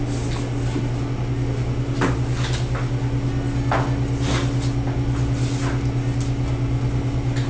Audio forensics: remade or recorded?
recorded